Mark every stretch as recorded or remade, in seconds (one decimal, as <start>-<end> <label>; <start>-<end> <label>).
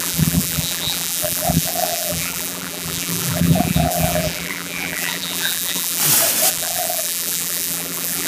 0.0-6.0 remade; 6.0-6.5 recorded; 6.5-8.3 remade